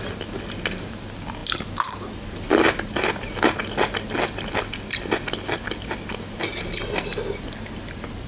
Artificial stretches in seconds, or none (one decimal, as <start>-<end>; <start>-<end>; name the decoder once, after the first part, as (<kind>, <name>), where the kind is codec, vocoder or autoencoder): none